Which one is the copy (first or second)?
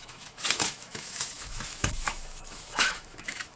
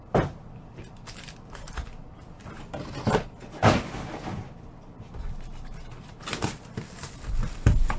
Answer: first